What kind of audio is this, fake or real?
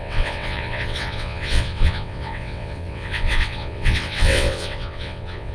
fake